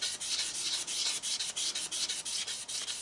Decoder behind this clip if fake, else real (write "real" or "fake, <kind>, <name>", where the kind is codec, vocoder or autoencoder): real